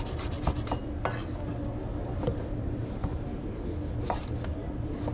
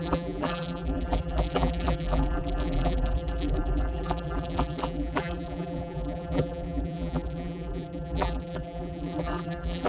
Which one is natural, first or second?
first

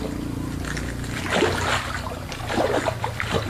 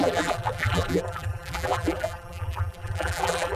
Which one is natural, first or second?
first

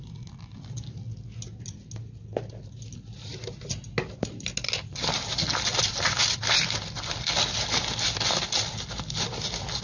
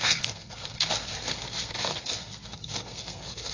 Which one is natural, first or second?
first